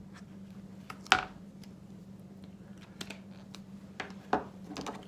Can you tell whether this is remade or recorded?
recorded